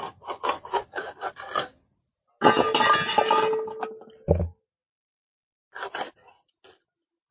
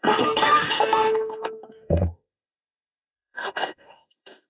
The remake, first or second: second